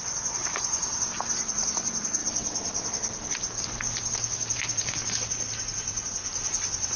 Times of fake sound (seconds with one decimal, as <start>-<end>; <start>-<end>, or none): 0.0-0.8